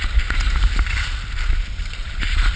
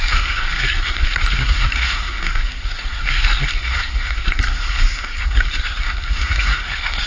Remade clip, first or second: second